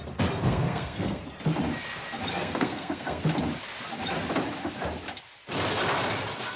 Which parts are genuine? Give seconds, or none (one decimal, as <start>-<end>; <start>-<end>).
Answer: 0.0-0.4; 1.2-2.3; 3.2-6.6